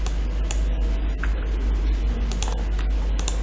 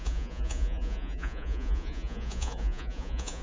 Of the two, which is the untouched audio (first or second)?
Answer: first